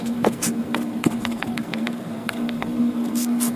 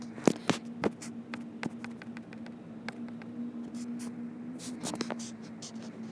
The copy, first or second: first